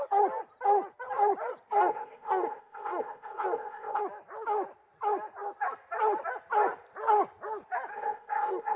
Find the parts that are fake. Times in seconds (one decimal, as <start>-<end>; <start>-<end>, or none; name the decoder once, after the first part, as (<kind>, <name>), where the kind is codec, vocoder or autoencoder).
1.8-4.0 (codec, ZipCodec); 7.9-8.8